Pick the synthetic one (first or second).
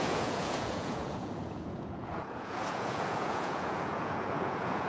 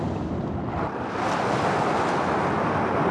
first